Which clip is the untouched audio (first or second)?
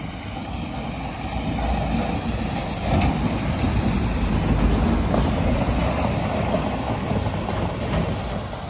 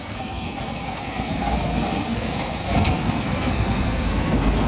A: first